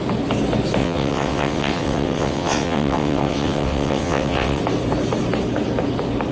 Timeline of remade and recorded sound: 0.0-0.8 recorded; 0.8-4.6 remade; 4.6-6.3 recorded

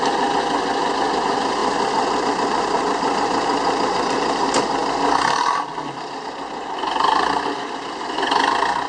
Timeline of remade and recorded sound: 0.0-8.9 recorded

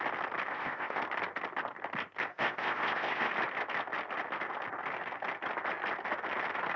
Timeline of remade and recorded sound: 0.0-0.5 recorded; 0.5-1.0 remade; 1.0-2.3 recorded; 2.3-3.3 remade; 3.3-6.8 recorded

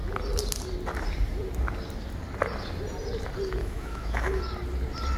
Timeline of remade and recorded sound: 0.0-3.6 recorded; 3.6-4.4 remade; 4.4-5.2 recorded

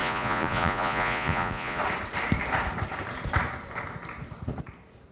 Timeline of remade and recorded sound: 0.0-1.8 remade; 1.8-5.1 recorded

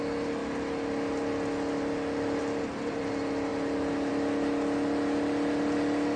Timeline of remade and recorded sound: 0.0-6.2 recorded

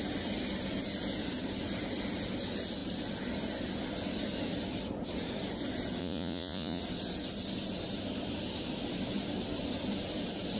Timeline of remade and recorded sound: 0.0-6.0 recorded; 6.0-6.8 remade; 6.8-10.6 recorded